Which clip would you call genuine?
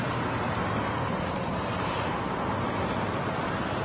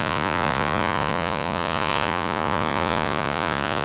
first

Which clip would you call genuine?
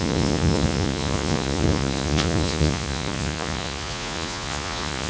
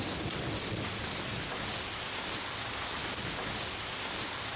second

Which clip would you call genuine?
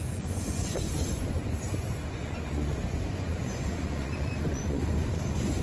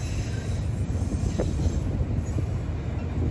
second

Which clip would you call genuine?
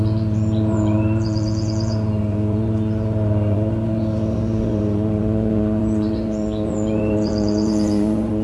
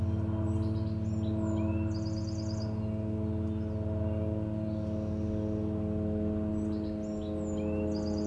second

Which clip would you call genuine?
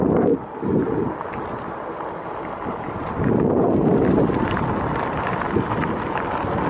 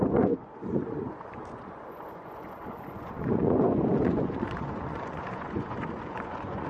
first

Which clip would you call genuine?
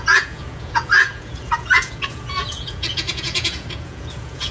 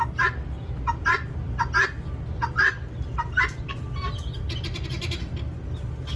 second